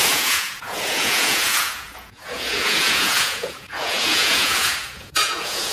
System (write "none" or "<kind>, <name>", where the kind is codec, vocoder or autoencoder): vocoder, Vocos